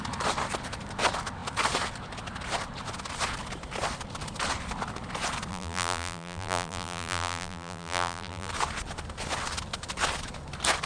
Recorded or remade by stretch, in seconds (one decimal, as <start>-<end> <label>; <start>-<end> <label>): 0.0-5.5 recorded; 5.5-8.5 remade; 8.5-10.9 recorded